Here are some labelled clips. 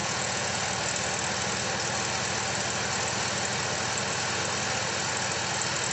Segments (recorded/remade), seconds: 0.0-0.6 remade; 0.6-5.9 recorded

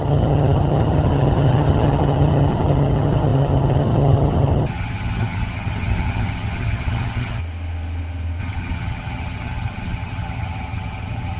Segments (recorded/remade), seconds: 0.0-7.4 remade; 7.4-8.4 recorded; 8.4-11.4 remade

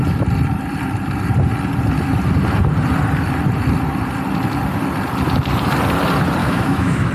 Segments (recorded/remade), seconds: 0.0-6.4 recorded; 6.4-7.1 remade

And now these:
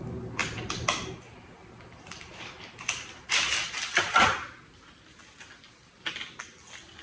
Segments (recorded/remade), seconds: 0.0-7.0 recorded